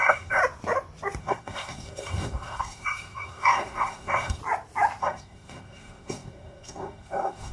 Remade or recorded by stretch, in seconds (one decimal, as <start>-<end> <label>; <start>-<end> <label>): 0.0-0.4 remade; 0.4-1.2 recorded; 1.2-4.4 remade; 4.4-5.0 recorded; 5.0-7.5 remade